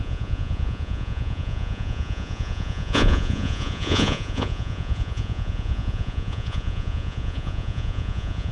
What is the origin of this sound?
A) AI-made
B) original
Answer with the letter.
A